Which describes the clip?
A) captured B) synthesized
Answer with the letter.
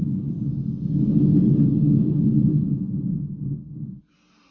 A